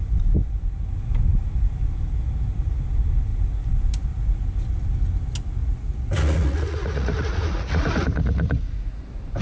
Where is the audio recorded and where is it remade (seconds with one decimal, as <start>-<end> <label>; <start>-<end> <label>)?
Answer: 0.0-5.6 recorded; 5.6-9.0 remade; 9.0-9.4 recorded